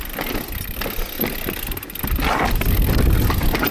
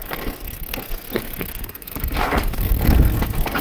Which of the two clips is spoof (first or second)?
second